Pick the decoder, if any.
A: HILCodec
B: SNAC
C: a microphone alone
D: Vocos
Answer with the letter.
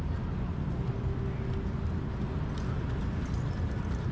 C